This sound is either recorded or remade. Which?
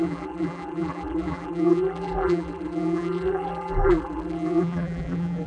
remade